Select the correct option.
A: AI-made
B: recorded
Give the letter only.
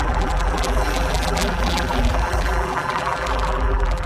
A